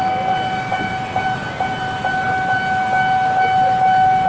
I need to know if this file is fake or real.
real